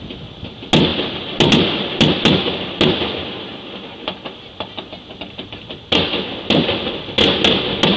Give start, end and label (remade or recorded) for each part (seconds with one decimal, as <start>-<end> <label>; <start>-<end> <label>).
0.0-8.0 recorded